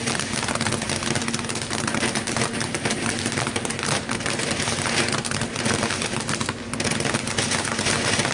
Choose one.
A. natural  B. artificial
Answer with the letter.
A